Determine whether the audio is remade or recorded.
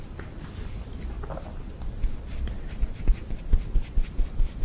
recorded